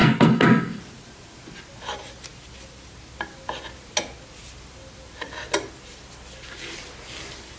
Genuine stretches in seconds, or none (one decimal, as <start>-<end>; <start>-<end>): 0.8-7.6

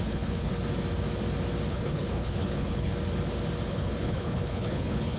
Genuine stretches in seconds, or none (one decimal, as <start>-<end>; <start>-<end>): 0.5-1.7; 2.9-3.7

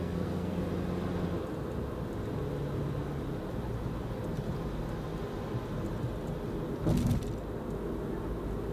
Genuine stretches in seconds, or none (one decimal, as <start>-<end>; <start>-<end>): 0.6-8.7